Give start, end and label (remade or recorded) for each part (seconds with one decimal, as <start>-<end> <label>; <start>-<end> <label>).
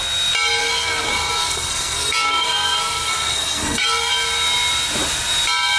0.0-0.6 recorded; 0.6-4.1 remade; 4.1-5.8 recorded